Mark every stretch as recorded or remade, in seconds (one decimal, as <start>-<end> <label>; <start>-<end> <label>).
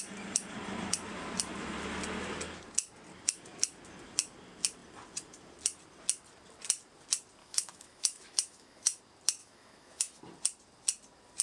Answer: 0.0-7.4 recorded; 7.4-9.0 remade; 9.0-9.4 recorded; 9.4-10.2 remade; 10.2-11.4 recorded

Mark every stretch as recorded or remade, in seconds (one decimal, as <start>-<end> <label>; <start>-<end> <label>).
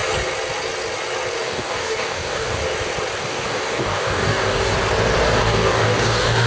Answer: 0.0-1.4 recorded; 1.4-2.6 remade; 2.6-3.2 recorded; 3.2-4.7 remade; 4.7-5.4 recorded; 5.4-6.5 remade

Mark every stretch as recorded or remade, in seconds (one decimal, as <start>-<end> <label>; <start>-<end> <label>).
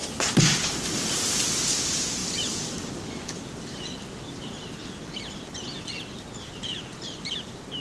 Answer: 0.0-0.9 remade; 0.9-2.2 recorded; 2.2-3.8 remade; 3.8-4.8 recorded; 4.8-7.8 remade